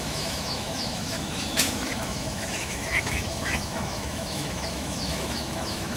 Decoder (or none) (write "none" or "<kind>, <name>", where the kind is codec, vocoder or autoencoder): autoencoder, DAC-VAE